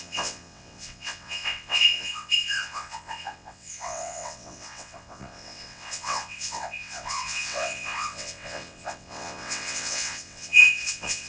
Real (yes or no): no